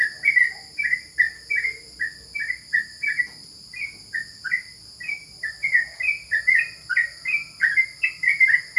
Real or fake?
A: real